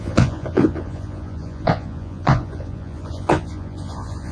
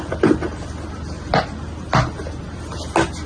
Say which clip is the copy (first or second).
first